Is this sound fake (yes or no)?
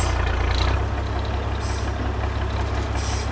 no